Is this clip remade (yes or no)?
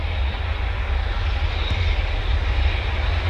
no